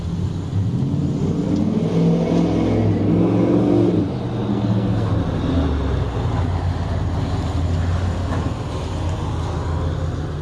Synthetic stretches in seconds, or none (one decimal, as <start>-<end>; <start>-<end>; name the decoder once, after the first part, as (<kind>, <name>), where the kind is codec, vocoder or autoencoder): 4.5-5.1 (codec, SNAC)